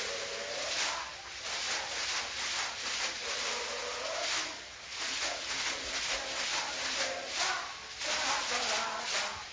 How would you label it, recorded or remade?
recorded